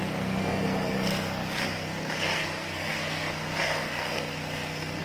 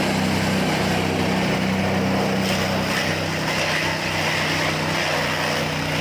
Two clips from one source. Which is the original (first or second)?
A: second